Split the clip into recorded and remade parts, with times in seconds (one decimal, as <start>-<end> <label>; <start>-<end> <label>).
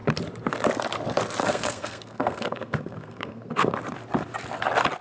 0.0-1.4 recorded; 1.4-3.7 remade; 3.7-5.0 recorded